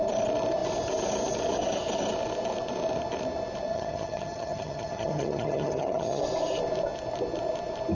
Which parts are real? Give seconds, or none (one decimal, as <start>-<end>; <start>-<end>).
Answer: 0.0-3.7; 6.2-7.9